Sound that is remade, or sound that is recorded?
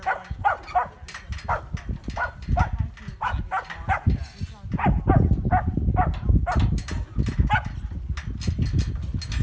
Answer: recorded